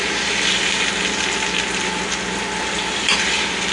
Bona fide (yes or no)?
yes